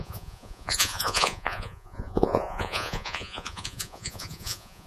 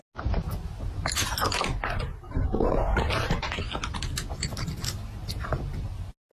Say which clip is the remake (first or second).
first